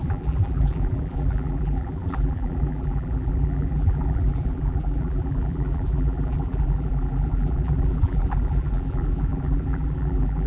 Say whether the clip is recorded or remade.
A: remade